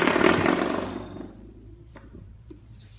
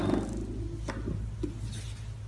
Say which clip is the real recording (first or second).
second